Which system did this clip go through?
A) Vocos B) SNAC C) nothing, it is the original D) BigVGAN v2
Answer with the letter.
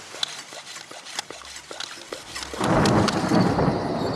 C